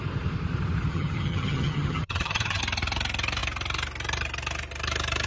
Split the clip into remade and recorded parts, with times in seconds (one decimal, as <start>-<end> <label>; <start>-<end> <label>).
0.0-0.9 recorded; 0.9-2.6 remade; 2.6-5.3 recorded